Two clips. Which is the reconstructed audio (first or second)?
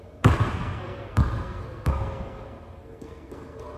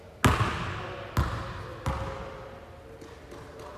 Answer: first